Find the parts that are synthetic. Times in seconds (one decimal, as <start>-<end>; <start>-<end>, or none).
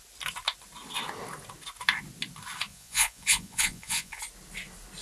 2.7-4.2